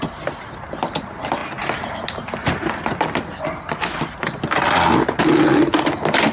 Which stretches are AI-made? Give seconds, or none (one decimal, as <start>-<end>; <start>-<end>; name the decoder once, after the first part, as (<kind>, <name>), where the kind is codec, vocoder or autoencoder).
none